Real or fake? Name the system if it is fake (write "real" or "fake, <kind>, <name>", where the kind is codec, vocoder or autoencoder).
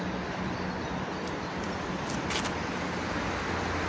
real